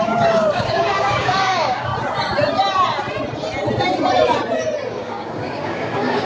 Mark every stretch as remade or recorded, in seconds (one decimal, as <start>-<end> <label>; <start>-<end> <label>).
0.0-1.9 remade; 1.9-4.9 recorded; 4.9-6.3 remade